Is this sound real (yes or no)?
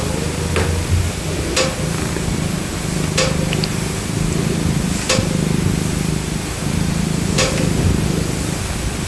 yes